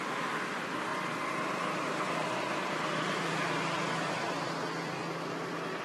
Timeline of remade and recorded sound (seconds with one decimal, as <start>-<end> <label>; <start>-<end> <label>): 0.0-0.9 recorded; 0.9-4.4 remade; 4.4-5.8 recorded